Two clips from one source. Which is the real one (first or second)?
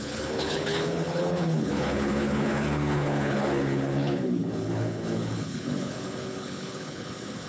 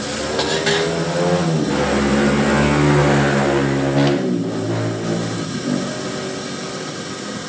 second